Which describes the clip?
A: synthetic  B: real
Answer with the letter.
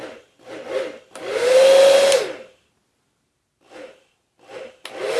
B